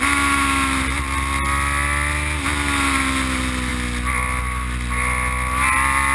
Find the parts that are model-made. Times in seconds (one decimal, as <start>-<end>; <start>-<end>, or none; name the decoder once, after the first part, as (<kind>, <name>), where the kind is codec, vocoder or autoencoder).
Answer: none